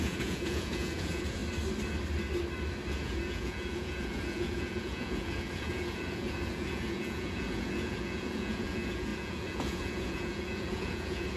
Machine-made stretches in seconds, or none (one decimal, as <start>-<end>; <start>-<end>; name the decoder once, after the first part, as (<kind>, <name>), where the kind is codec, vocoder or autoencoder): 0.0-1.4 (vocoder, Vocos); 2.9-11.4